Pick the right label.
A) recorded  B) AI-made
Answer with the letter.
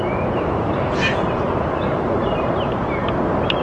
B